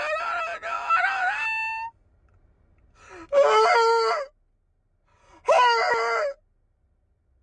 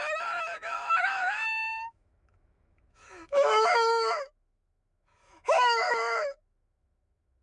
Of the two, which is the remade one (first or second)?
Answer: second